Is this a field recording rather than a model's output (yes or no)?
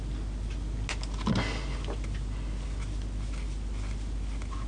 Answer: yes